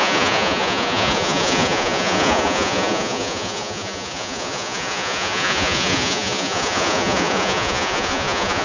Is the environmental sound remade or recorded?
remade